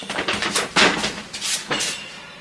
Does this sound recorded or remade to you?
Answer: recorded